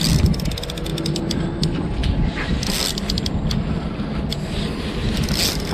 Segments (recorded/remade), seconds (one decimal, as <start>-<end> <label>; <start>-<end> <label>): 0.0-0.9 recorded; 0.9-1.5 remade; 1.5-5.7 recorded